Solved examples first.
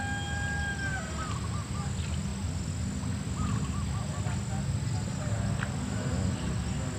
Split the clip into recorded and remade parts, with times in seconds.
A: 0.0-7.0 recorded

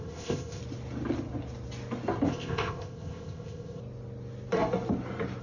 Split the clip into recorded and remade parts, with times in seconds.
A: 0.0-0.6 remade; 0.6-2.3 recorded; 2.3-3.8 remade; 3.8-5.4 recorded

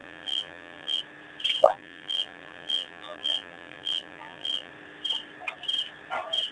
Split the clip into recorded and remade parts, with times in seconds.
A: 0.0-1.0 remade; 1.0-1.6 recorded; 1.6-4.7 remade; 4.7-6.5 recorded

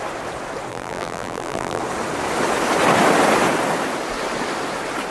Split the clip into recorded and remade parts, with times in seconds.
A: 0.0-0.7 recorded; 0.7-1.8 remade; 1.8-5.1 recorded

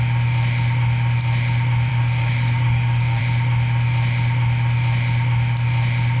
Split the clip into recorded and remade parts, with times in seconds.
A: 0.0-1.9 recorded; 1.9-3.2 remade; 3.2-6.2 recorded